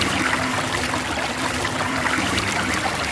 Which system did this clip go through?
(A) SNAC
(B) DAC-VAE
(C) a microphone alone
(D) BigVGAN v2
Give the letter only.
D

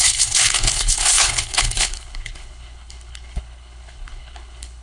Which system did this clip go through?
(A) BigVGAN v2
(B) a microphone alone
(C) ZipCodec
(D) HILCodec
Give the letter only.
D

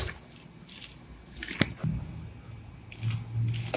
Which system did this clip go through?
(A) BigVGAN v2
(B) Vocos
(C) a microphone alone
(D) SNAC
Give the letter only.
C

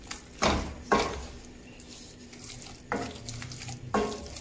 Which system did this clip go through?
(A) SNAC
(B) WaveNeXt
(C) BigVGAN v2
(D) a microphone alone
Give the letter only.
D